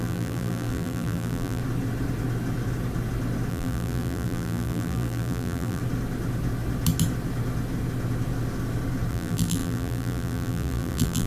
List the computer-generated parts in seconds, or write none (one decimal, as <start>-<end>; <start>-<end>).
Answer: 0.0-1.6; 3.5-5.8; 9.1-11.3